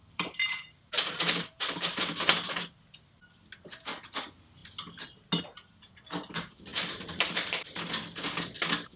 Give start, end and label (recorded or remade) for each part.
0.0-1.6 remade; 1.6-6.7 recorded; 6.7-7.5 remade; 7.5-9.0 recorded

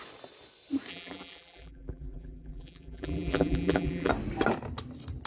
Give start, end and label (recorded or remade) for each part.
0.0-0.9 recorded; 0.9-4.1 remade; 4.1-5.3 recorded

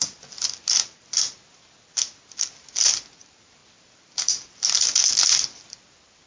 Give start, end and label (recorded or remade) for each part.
0.0-6.3 recorded

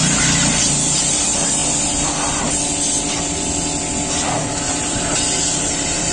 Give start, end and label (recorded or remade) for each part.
0.0-1.6 remade; 1.6-4.7 recorded; 4.7-6.1 remade